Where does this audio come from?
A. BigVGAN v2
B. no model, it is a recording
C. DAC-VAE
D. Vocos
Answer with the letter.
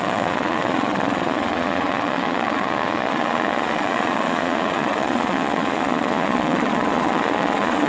D